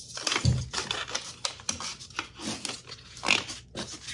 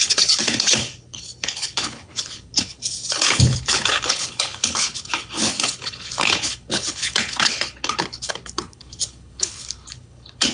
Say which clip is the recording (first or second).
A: first